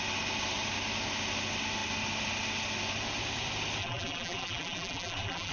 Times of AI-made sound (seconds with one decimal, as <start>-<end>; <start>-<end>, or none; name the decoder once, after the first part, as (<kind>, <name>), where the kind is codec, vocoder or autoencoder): 3.8-5.5 (vocoder, BigVGAN v2)

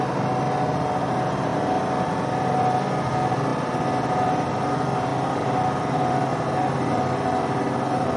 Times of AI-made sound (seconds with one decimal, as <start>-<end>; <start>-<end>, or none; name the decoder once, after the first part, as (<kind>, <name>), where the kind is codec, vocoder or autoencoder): none

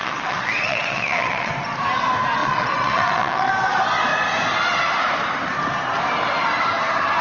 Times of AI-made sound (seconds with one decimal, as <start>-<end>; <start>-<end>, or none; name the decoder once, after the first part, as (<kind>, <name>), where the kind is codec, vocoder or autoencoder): 0.0-1.5 (vocoder, WaveNeXt); 2.4-3.5